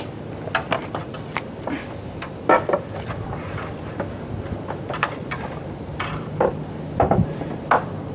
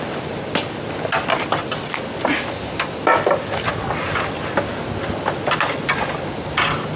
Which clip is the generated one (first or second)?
first